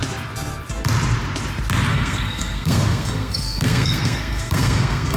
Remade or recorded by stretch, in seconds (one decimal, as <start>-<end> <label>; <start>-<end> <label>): 0.0-1.9 recorded; 1.9-5.2 remade